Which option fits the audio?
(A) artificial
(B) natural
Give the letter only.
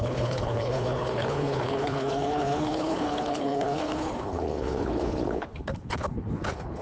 A